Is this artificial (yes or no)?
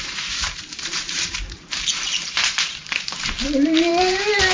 yes